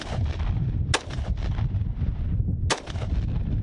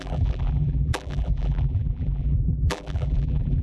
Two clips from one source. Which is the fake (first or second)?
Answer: second